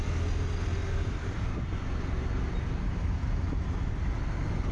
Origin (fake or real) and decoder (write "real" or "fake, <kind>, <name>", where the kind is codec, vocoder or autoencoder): real